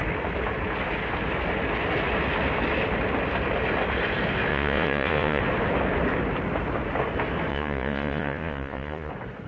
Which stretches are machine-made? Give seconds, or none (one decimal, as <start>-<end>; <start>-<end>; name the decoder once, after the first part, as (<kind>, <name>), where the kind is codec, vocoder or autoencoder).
4.5-5.4 (vocoder, Vocos); 7.5-9.1